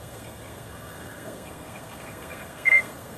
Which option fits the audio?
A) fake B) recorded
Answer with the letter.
A